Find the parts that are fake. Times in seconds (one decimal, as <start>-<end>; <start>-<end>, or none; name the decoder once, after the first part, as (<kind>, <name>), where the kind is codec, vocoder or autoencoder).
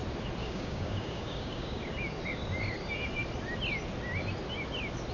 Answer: 0.4-1.8 (codec, DAC)